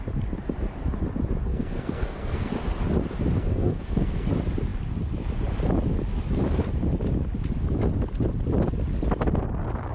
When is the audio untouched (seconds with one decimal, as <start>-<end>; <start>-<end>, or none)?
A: 0.0-1.5; 2.5-3.4; 4.3-9.9